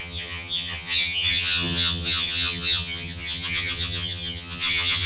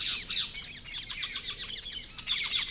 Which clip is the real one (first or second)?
second